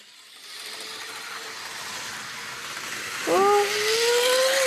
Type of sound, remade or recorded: recorded